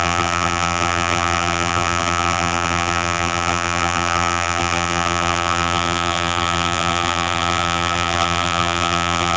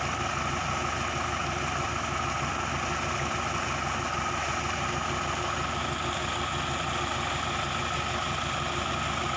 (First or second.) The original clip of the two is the second